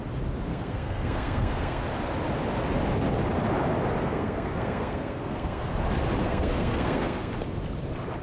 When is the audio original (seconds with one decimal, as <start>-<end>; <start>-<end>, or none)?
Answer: 0.0-0.5; 1.8-4.0; 5.7-6.2; 7.3-8.2